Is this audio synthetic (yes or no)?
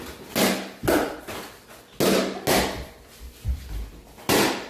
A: no